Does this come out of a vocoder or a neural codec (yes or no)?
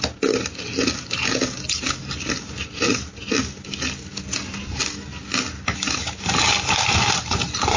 no